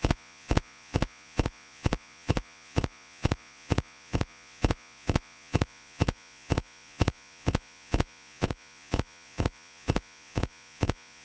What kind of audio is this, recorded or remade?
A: remade